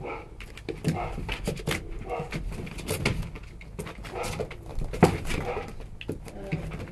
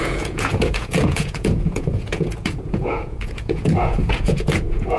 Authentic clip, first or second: first